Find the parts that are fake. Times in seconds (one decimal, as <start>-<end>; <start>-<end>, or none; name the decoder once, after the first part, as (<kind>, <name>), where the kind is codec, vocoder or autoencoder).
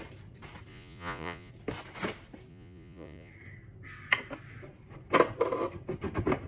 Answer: 0.7-1.5 (vocoder, Vocos); 2.5-3.3